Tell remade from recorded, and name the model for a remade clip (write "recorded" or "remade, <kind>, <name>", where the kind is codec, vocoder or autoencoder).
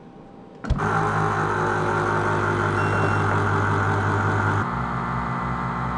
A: recorded